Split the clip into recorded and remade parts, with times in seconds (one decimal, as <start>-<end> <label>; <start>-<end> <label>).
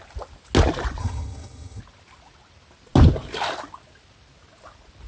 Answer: 0.0-1.0 recorded; 1.0-1.8 remade; 1.8-5.1 recorded